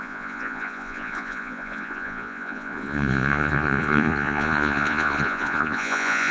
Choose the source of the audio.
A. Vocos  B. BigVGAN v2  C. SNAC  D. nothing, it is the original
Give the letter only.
A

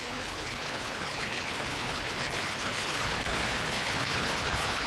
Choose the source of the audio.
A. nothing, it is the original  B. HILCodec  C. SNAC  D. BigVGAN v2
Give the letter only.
B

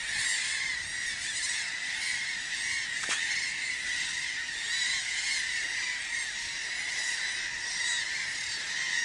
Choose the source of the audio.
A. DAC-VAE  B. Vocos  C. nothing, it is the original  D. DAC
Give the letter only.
C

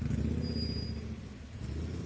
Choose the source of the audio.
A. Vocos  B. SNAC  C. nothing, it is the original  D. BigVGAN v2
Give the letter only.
C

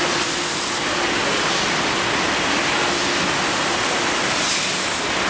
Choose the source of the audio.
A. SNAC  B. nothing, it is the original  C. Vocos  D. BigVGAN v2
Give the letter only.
B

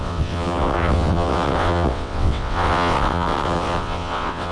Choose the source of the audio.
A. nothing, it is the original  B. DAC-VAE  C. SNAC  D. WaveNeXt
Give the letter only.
D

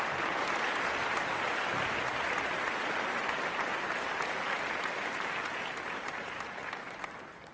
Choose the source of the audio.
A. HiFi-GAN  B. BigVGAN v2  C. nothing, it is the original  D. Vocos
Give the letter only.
C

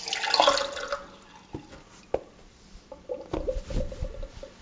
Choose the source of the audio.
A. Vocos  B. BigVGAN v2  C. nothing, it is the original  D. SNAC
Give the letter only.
C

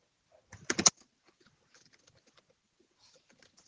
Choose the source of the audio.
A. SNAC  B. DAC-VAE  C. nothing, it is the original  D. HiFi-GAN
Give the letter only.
C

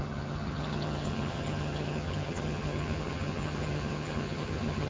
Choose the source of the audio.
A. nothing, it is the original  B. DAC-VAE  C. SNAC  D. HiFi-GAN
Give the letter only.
D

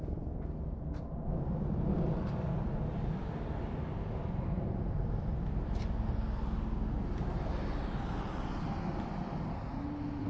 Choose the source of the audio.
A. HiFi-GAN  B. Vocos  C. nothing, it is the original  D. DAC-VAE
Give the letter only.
C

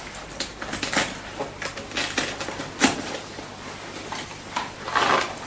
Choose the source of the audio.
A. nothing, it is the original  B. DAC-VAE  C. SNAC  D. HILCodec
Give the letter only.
A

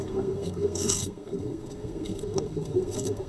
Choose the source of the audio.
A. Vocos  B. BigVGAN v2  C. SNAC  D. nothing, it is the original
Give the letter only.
C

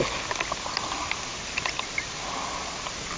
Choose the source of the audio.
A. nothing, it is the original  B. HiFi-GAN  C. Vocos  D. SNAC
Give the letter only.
A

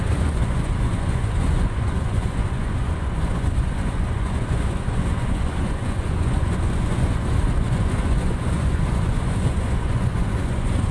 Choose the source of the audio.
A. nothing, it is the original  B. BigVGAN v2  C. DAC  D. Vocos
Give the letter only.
D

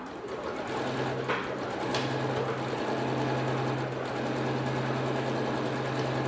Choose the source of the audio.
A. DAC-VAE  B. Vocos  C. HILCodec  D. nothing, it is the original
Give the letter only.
D